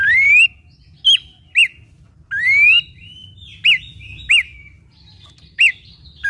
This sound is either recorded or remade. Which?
recorded